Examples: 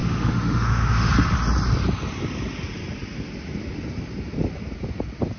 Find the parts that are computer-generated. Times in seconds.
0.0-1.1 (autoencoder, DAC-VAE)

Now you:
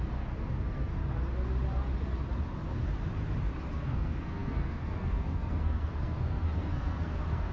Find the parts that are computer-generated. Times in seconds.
0.0-1.0 (codec, SNAC); 3.7-7.5

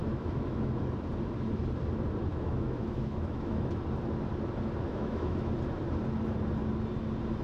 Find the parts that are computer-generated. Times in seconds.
0.0-0.8 (autoencoder, DAC-VAE); 2.3-3.8; 4.9-5.5

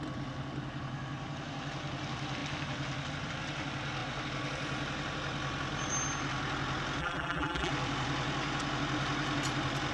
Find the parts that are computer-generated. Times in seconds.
7.0-7.7 (vocoder, BigVGAN v2)